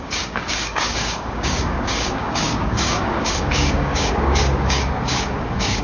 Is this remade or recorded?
remade